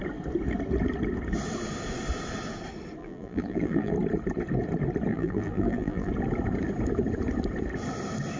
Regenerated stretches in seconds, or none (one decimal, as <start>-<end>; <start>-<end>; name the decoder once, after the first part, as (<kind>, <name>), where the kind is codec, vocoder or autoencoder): 3.0-3.9 (vocoder, BigVGAN v2); 5.1-6.1